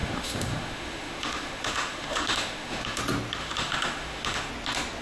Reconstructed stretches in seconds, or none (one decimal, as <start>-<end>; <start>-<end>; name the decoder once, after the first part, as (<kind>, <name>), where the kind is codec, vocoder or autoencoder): 0.0-3.0 (autoencoder, DAC-VAE); 3.4-4.5